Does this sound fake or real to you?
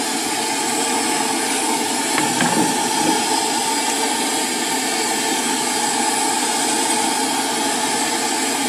real